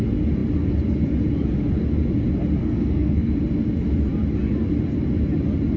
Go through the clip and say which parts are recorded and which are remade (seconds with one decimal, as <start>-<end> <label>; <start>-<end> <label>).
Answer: 0.0-2.6 recorded; 2.6-3.3 remade; 3.3-5.8 recorded